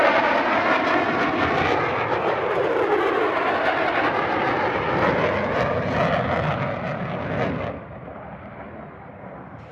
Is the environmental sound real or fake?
real